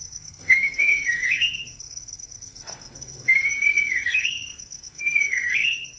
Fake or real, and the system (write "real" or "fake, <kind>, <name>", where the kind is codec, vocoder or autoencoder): fake, codec, SNAC